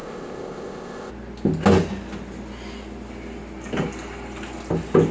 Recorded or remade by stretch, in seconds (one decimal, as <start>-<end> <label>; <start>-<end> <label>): 0.0-1.1 remade; 1.1-5.1 recorded